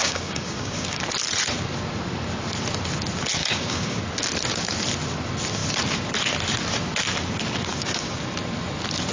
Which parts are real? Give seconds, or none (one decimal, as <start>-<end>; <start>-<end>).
1.0-3.4; 4.0-7.7; 8.2-9.1